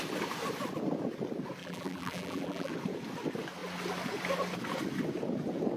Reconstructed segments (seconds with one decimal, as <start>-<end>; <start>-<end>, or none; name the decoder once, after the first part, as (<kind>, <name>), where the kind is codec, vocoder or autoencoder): 1.6-2.7 (vocoder, BigVGAN v2)